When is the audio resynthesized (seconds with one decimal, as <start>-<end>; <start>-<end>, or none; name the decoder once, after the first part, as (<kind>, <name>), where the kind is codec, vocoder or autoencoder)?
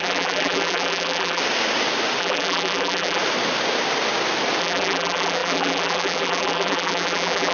0.0-1.4 (vocoder, BigVGAN v2); 2.2-3.2; 4.6-7.5